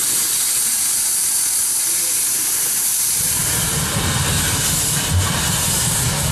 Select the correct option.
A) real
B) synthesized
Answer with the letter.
A